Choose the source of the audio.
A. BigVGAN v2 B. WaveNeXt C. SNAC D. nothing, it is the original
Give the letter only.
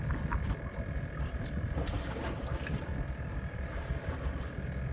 D